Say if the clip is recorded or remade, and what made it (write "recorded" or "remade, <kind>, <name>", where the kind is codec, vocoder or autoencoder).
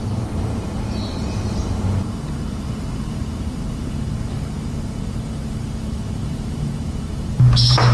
remade, vocoder, BigVGAN v2